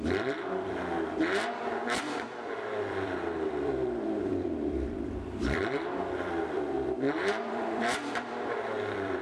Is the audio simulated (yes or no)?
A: yes